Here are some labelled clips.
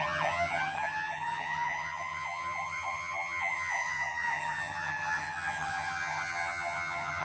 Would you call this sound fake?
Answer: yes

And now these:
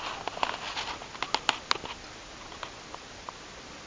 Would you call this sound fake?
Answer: no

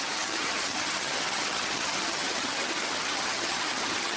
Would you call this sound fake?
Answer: yes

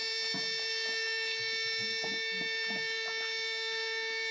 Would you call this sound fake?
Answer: no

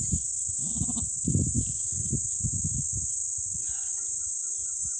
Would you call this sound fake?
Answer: no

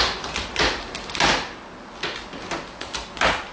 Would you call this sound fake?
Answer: no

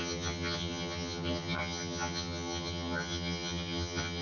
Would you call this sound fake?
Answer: yes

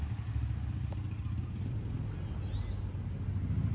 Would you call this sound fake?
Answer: no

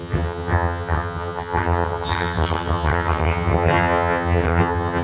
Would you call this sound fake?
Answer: yes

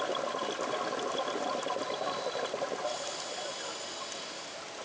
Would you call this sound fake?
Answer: no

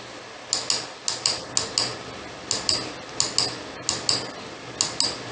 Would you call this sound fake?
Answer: no